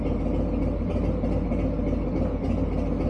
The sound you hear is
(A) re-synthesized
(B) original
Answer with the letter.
B